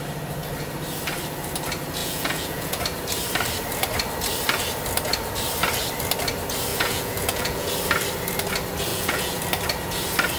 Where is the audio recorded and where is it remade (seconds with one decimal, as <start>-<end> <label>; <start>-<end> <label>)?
0.0-2.0 recorded; 2.0-2.8 remade; 2.8-6.7 recorded; 6.7-7.7 remade; 7.7-8.9 recorded; 8.9-9.4 remade; 9.4-10.4 recorded